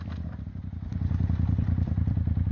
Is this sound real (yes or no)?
no